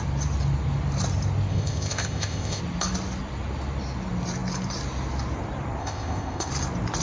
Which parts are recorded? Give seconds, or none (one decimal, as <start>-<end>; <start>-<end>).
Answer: 0.0-1.5; 2.6-5.8; 6.5-7.0